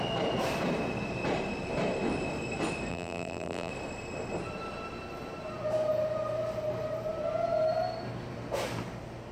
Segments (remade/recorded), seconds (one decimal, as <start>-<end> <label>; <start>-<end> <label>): 0.0-2.9 recorded; 2.9-3.7 remade; 3.7-9.3 recorded